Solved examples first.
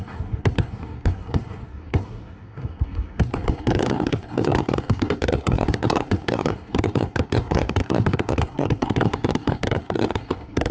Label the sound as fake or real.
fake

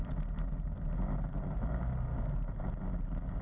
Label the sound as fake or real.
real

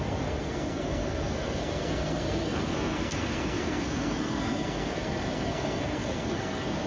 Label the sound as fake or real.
fake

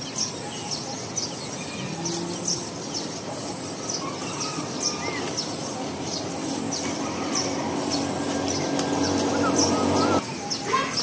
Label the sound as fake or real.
real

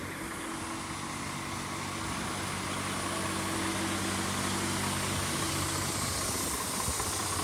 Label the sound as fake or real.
real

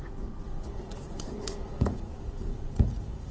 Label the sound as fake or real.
fake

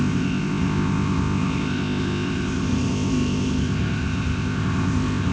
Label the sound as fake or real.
fake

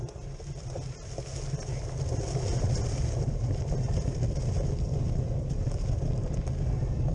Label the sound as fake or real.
real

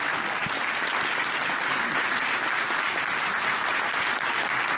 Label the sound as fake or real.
real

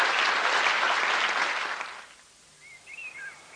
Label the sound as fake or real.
real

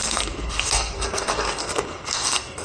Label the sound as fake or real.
fake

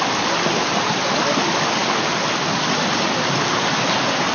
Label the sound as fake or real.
real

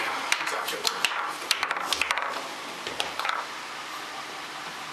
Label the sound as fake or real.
fake